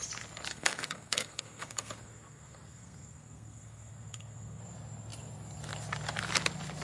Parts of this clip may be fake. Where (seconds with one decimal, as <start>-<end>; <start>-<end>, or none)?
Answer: 0.5-4.6